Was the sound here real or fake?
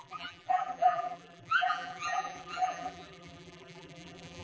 fake